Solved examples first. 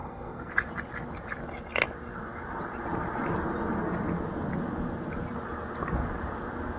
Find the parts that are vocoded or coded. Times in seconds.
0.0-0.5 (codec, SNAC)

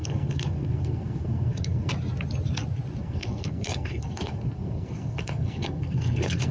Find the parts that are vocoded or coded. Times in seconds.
0.0-1.9 (codec, SNAC); 3.0-6.5

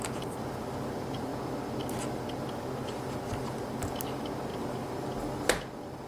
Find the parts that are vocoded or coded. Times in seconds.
none

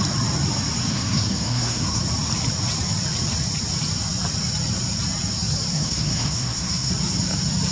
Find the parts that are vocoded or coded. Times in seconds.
0.9-2.0 (codec, SNAC); 5.7-6.9

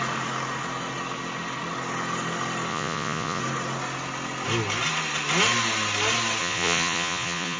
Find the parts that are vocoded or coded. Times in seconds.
2.7-3.4 (vocoder, Vocos); 6.4-7.6